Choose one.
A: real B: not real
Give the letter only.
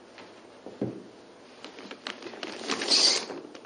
A